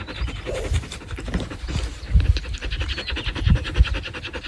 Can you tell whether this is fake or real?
real